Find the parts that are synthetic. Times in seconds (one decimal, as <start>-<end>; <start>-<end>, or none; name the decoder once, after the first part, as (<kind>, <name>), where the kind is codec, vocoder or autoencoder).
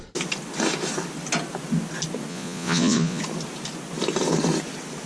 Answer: 2.3-3.2 (vocoder, Vocos)